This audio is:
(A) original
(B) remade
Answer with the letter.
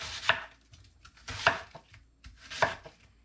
A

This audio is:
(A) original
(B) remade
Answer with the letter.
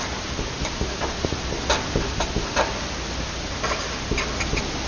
A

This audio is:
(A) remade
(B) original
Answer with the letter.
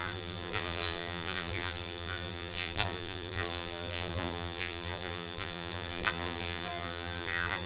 A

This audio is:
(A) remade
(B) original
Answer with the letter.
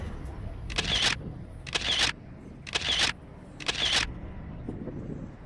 B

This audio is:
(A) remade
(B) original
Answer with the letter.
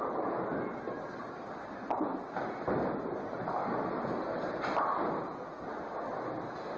B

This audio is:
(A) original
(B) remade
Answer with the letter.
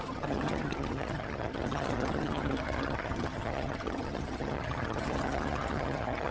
B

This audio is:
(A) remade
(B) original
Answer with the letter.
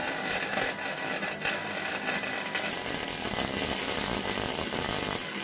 B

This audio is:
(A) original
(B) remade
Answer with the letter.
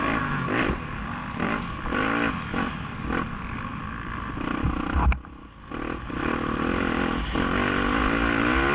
A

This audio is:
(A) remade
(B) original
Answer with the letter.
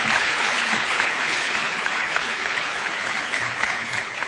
A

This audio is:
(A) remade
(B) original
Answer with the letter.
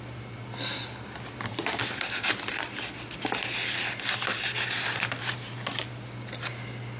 B